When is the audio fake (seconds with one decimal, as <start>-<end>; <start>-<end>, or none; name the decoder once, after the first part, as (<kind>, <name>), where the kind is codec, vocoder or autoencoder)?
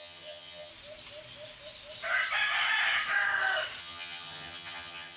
0.0-0.7 (vocoder, HiFi-GAN); 3.8-5.2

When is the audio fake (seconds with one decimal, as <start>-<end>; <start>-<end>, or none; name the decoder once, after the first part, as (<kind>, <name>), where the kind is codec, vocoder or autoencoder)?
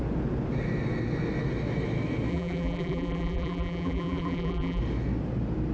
2.3-4.8 (vocoder, BigVGAN v2)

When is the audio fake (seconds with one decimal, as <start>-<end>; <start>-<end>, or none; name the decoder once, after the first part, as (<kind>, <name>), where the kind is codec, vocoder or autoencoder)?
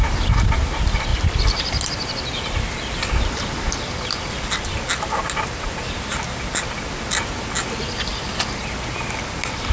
none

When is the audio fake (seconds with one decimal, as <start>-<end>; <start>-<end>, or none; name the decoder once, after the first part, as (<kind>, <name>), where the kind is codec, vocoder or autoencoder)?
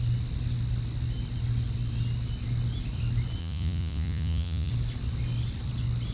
3.4-4.7 (vocoder, Vocos)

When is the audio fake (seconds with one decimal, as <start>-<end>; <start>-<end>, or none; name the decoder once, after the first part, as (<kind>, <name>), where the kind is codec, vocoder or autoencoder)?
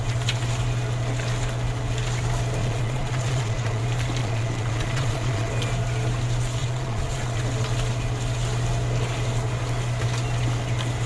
2.6-3.8 (vocoder, Vocos); 4.2-5.5; 6.6-7.4